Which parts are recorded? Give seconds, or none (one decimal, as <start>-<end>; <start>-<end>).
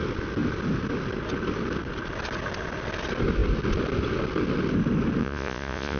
0.0-5.2